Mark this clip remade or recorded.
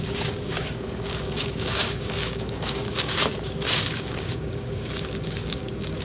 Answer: remade